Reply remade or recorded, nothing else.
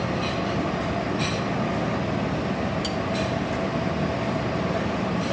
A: recorded